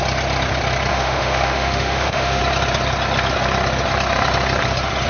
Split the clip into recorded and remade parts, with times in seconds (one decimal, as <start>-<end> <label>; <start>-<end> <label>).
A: 0.0-0.9 recorded; 0.9-2.4 remade; 2.4-5.1 recorded